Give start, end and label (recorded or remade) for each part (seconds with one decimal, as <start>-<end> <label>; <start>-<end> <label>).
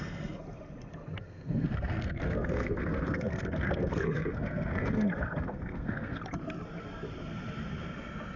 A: 0.0-1.2 recorded; 1.2-6.2 remade; 6.2-8.4 recorded